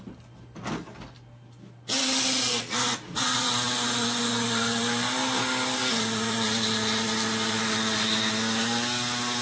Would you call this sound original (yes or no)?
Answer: yes